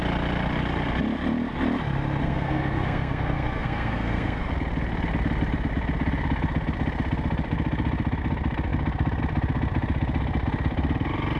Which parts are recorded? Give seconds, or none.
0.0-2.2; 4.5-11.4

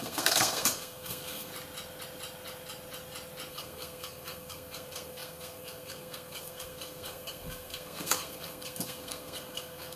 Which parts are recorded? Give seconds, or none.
1.5-3.5

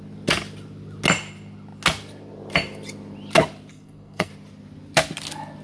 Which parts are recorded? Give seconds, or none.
0.0-3.7; 4.3-5.6

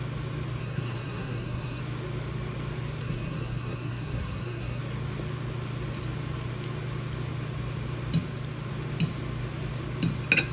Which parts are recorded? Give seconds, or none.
0.0-0.6; 1.8-3.0; 4.8-10.5

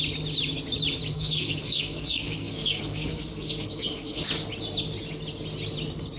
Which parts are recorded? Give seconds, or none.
0.0-1.1; 4.3-6.2

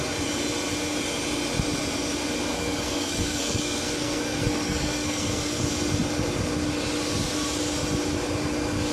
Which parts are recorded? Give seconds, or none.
0.0-2.5; 5.6-8.9